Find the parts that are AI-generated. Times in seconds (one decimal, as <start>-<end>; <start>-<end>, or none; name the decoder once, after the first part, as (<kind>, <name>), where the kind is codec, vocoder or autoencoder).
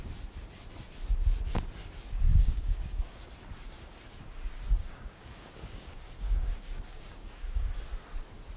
1.8-3.2 (codec, DAC); 4.8-7.6